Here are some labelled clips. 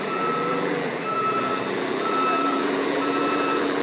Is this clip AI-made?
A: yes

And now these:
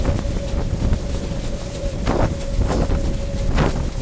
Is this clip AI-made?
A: no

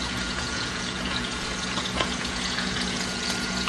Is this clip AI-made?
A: yes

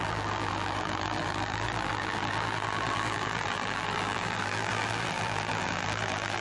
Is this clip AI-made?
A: yes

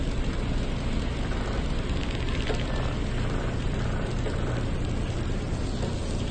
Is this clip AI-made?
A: no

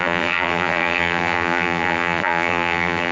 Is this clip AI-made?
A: yes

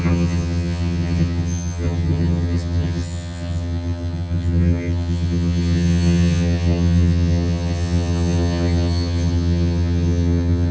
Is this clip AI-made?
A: yes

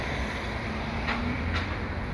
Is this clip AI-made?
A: yes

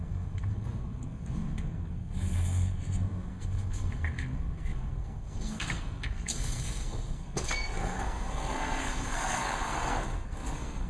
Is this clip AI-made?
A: yes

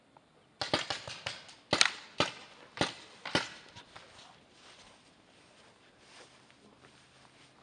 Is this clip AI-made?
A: no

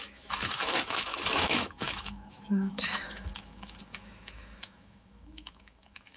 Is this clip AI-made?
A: yes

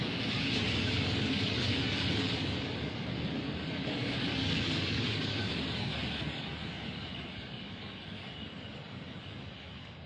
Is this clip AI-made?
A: yes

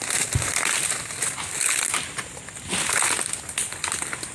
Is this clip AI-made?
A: no